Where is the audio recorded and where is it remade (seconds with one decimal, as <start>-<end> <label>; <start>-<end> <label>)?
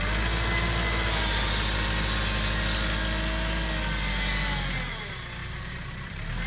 0.0-5.4 recorded; 5.4-6.5 remade